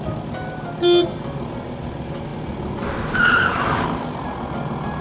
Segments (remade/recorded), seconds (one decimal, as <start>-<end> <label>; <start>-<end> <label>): 0.0-5.0 recorded